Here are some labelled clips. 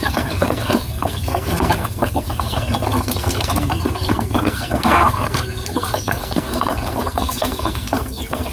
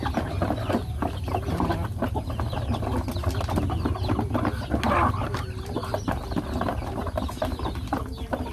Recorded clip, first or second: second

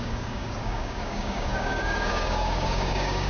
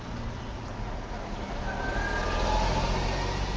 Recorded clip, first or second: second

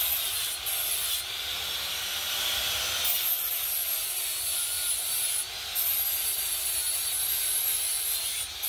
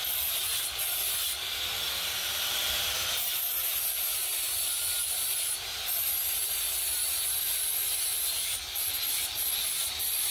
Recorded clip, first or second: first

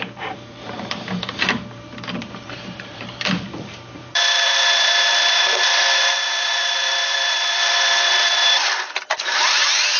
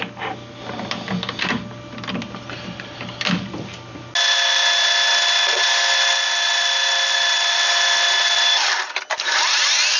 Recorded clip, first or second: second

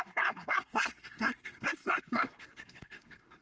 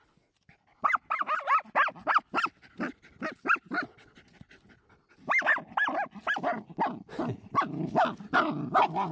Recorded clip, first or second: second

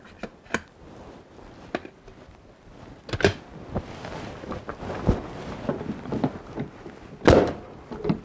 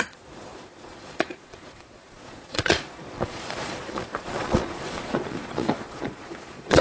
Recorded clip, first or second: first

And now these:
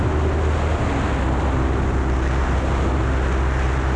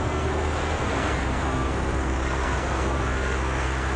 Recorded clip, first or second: first